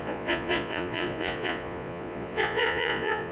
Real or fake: fake